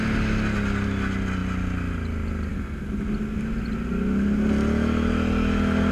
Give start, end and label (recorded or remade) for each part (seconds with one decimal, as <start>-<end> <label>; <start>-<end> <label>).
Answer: 0.0-5.9 recorded